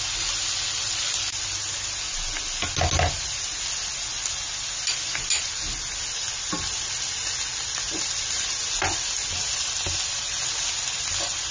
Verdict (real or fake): real